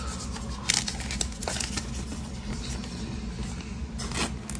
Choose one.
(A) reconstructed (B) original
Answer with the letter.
B